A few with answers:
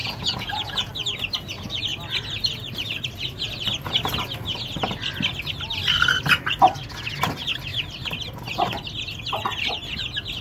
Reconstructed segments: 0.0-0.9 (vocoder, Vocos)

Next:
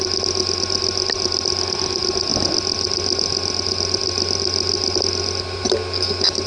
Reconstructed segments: none

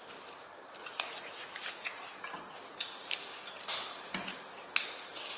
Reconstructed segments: 0.8-2.0 (vocoder, Vocos)

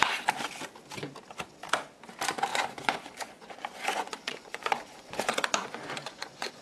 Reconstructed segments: 2.5-6.6 (vocoder, Vocos)

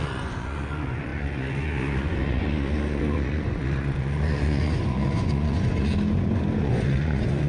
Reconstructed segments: 0.0-5.9 (vocoder, Vocos); 6.6-7.5

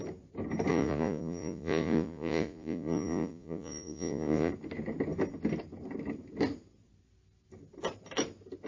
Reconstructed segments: 0.7-4.5 (vocoder, Vocos)

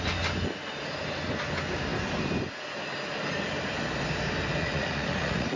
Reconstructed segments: 4.6-5.6 (vocoder, Vocos)